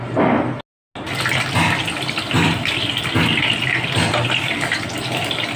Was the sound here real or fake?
real